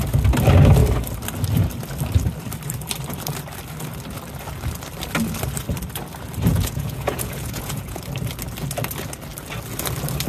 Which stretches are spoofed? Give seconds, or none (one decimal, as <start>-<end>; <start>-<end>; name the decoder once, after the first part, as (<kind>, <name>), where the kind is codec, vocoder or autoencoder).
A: 6.5-8.0 (vocoder, Vocos)